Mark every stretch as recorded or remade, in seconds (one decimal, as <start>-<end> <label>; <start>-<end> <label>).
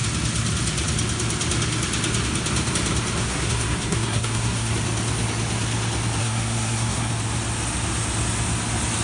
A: 0.0-3.2 recorded; 3.2-4.7 remade; 4.7-6.2 recorded; 6.2-7.1 remade; 7.1-9.0 recorded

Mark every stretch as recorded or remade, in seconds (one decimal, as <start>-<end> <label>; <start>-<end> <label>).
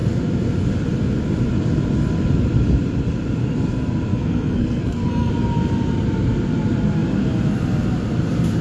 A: 0.0-4.1 recorded; 4.1-5.3 remade; 5.3-8.6 recorded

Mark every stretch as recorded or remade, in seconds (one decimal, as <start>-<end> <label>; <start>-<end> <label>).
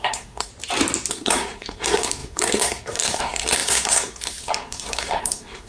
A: 0.0-0.5 remade; 0.5-1.1 recorded; 1.1-5.7 remade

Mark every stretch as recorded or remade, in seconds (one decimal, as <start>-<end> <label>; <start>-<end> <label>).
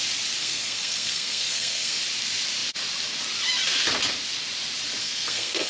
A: 0.0-0.4 recorded; 0.4-2.0 remade; 2.0-5.0 recorded; 5.0-5.7 remade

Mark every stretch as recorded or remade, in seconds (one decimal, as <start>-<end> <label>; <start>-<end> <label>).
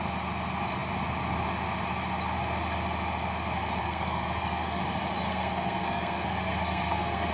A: 0.0-3.8 recorded; 3.8-4.8 remade; 4.8-5.3 recorded; 5.3-7.3 remade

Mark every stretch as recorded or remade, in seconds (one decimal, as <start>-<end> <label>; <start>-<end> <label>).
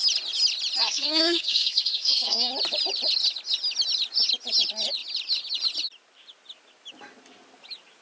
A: 0.0-0.8 recorded; 0.8-2.5 remade; 2.5-8.0 recorded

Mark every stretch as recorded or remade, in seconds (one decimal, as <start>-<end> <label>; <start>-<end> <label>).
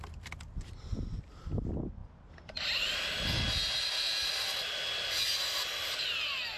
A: 0.0-6.6 recorded